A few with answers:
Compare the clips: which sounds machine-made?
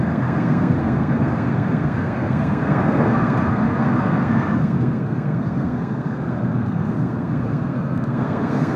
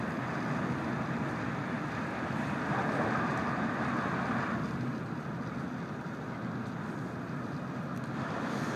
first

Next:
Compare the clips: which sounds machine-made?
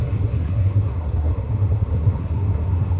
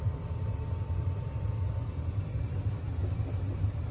first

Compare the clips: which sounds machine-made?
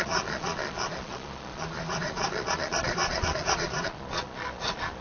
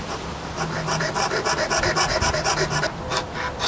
first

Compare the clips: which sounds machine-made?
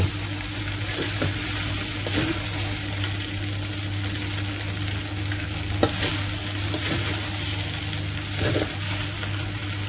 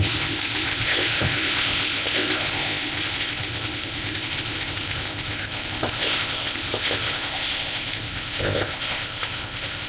second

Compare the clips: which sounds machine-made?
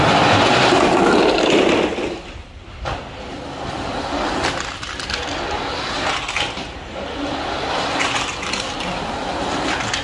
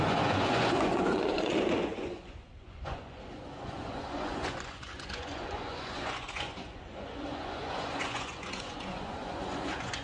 second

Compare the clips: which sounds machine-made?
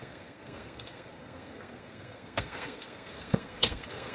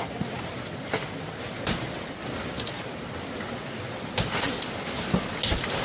first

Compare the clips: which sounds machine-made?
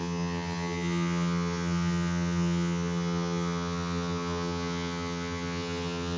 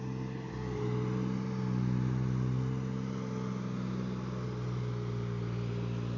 first